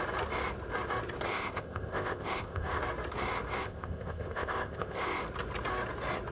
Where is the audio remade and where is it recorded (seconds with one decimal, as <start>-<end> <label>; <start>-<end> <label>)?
0.0-1.3 recorded; 1.3-2.8 remade; 2.8-3.6 recorded; 3.6-5.2 remade; 5.2-6.3 recorded